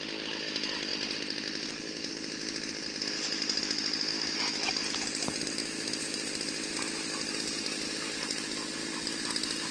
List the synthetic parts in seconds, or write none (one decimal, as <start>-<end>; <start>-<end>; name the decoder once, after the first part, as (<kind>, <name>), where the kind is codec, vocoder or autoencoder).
4.1-4.7 (autoencoder, DAC-VAE); 5.6-6.3